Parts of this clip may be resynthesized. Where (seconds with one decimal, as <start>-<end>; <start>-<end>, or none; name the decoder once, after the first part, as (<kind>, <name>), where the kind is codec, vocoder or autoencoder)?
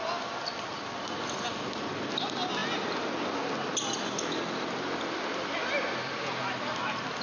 none